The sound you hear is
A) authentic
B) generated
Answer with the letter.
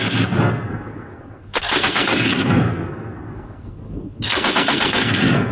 B